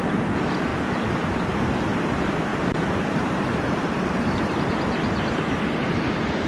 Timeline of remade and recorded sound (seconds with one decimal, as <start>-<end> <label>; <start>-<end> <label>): 0.0-2.5 recorded; 2.5-4.7 remade; 4.7-6.5 recorded